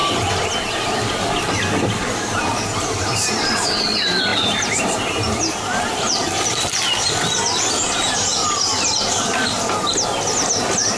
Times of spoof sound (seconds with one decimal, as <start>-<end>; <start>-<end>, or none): 2.8-3.5; 4.3-6.6